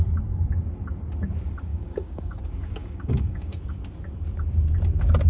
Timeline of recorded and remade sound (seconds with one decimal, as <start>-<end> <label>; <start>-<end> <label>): 0.0-1.7 recorded; 1.7-2.4 remade; 2.4-2.8 recorded; 2.8-3.7 remade; 3.7-5.3 recorded